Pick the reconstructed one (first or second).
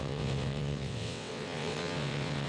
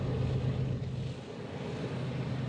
first